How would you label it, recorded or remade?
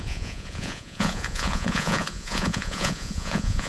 remade